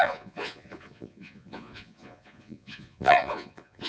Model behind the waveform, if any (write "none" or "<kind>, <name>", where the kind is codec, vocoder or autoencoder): vocoder, Vocos